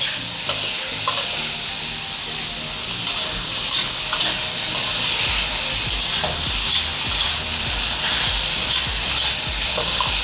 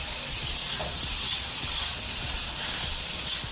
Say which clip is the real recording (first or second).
first